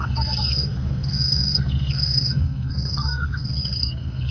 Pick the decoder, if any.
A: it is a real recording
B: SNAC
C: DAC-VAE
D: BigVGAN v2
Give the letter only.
B